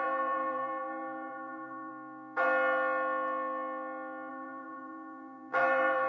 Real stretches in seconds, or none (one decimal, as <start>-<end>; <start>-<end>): 1.9-4.3